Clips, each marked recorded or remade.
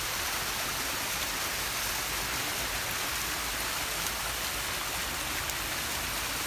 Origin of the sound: recorded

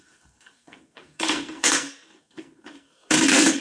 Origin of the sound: remade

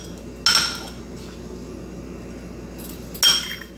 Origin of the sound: recorded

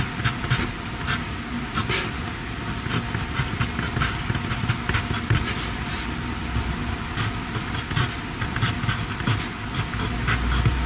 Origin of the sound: recorded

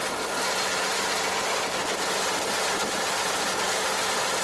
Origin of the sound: recorded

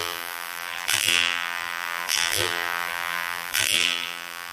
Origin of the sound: remade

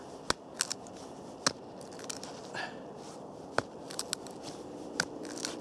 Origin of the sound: recorded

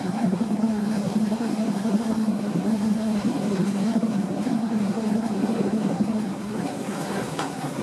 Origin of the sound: remade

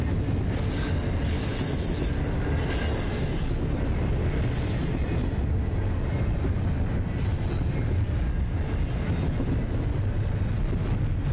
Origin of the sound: recorded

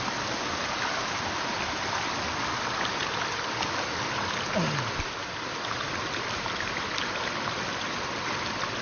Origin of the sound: recorded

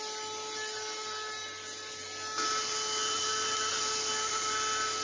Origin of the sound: recorded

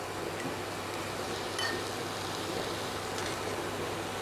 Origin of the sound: recorded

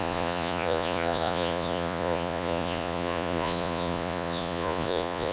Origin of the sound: remade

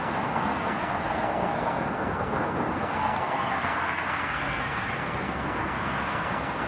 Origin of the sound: remade